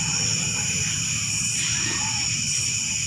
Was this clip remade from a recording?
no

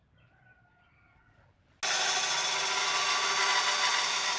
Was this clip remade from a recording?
no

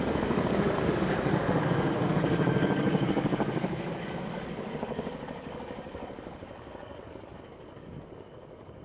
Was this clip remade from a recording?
yes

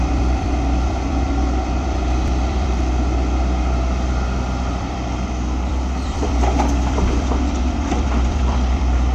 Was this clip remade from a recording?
yes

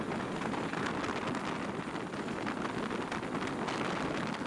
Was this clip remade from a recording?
no